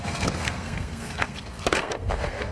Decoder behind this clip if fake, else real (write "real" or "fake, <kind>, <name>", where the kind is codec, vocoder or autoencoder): fake, codec, SNAC